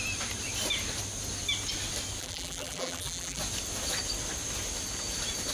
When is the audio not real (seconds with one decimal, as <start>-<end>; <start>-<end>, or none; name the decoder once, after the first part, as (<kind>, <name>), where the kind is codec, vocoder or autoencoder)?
2.2-3.4 (vocoder, BigVGAN v2)